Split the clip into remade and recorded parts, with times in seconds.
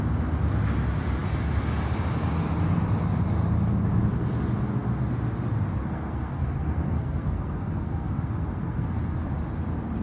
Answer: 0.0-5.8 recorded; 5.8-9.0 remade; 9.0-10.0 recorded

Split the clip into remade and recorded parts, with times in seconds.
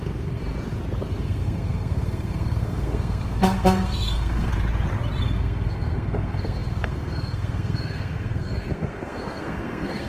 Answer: 0.0-0.4 remade; 0.4-1.2 recorded; 1.2-4.5 remade; 4.5-5.2 recorded; 5.2-10.1 remade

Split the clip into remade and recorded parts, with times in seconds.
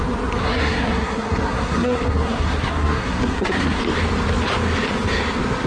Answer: 0.0-0.4 recorded; 0.4-3.8 remade; 3.8-5.7 recorded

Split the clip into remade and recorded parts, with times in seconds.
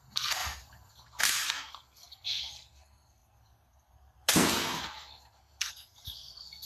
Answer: 0.0-6.7 remade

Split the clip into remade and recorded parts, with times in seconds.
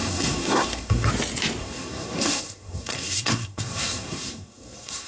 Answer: 0.0-1.1 remade; 1.1-1.6 recorded; 1.6-5.1 remade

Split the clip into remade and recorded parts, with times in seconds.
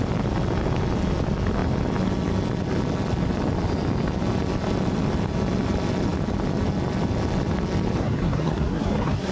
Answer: 0.0-8.0 recorded; 8.0-9.3 remade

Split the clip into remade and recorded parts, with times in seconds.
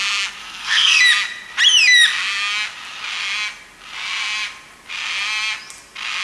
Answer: 0.0-0.4 recorded; 0.4-1.0 remade; 1.0-6.2 recorded